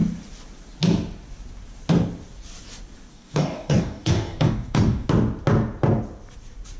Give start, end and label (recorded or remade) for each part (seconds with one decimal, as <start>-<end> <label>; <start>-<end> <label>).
0.0-3.1 recorded; 3.1-5.1 remade; 5.1-6.8 recorded